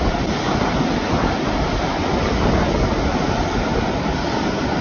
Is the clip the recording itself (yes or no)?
yes